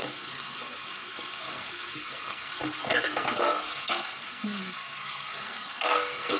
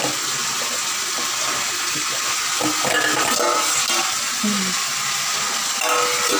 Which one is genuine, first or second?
second